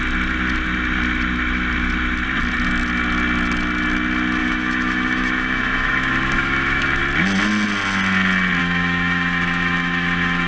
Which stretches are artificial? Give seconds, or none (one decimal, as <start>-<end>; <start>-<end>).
4.4-7.0; 8.6-10.5